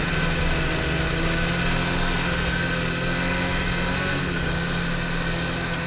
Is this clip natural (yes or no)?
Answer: yes